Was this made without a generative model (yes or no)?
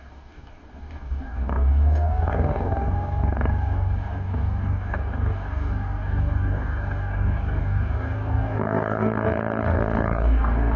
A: no